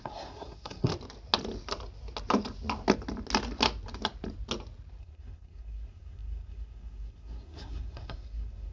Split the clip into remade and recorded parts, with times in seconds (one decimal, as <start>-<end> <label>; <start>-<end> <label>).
0.0-0.9 remade; 0.9-5.0 recorded; 5.0-8.7 remade